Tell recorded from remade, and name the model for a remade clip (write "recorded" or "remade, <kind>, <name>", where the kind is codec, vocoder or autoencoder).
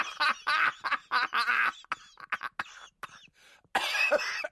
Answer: recorded